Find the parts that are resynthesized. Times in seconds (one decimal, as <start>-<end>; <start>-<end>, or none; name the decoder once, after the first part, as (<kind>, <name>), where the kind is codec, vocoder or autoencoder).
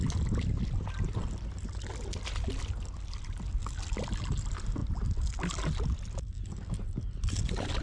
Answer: none